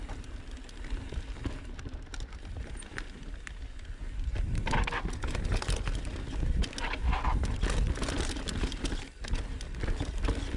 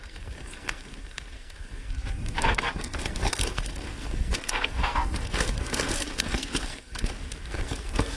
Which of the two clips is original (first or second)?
first